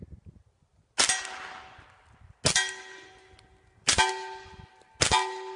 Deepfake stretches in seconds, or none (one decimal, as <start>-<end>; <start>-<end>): none